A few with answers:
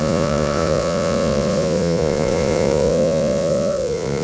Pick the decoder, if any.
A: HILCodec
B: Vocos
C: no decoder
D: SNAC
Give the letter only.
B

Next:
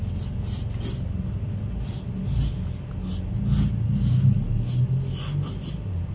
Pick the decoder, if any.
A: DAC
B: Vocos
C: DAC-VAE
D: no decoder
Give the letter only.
D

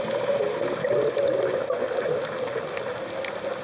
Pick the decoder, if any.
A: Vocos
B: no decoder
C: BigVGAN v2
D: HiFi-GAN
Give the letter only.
B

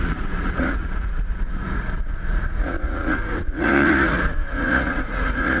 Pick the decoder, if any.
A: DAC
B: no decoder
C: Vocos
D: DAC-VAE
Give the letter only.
C